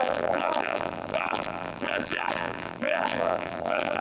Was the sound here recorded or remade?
remade